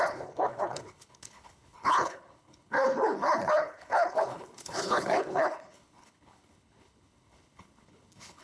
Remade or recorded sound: remade